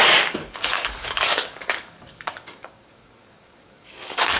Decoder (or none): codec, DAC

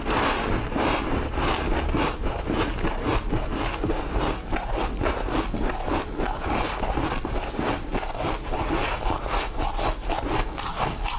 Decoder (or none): none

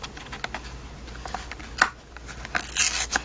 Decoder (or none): none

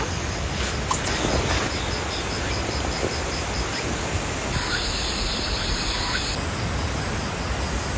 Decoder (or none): none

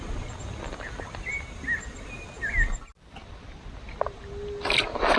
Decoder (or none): none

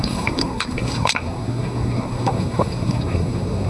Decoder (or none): codec, SNAC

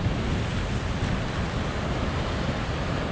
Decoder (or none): none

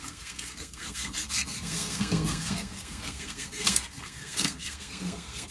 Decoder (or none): codec, SNAC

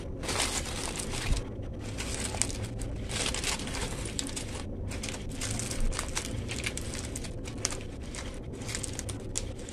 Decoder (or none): none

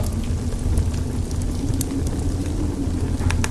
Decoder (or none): none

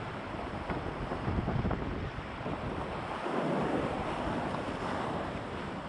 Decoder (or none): none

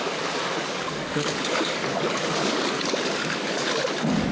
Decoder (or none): codec, DAC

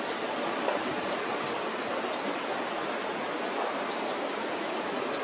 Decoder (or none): none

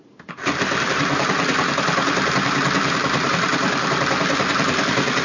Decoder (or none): none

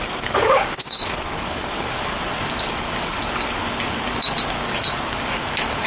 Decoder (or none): codec, DAC